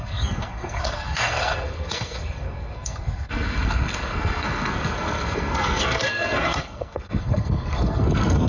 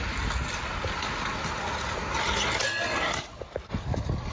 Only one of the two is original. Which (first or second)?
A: second